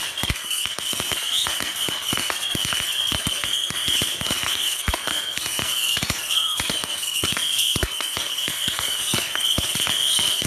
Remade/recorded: remade